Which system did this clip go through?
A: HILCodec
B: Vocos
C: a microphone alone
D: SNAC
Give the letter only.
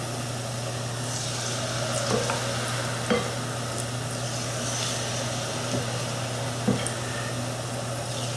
C